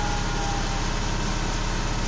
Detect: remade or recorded recorded